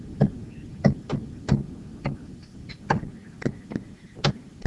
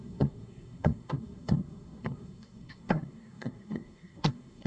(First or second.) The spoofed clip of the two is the second